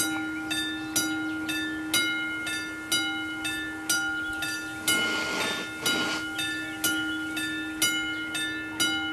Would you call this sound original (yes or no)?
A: yes